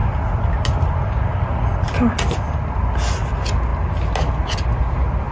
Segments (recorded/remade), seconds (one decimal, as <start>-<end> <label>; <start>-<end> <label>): 0.0-5.3 recorded